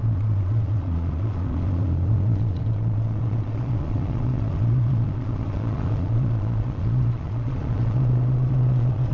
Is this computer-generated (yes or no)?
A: yes